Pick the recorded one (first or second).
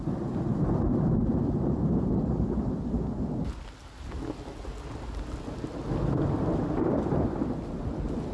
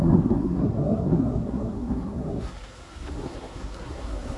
first